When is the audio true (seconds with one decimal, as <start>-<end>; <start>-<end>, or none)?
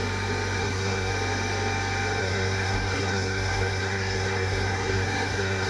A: 0.0-0.6; 1.1-2.2